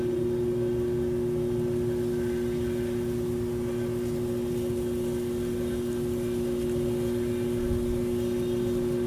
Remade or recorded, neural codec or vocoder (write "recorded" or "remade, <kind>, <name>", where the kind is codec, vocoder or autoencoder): recorded